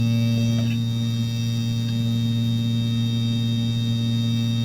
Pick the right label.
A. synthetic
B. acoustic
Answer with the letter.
B